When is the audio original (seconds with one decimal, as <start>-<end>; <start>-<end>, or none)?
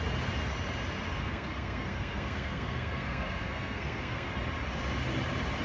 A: 0.0-1.1; 4.3-5.6